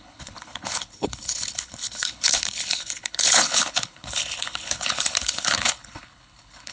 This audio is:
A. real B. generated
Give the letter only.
B